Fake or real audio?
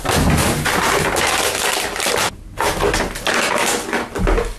real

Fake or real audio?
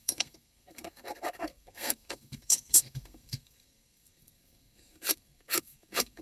fake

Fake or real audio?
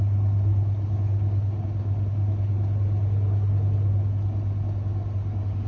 real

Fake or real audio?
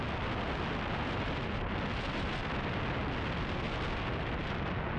real